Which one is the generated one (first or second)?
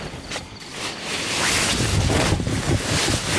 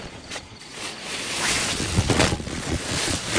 second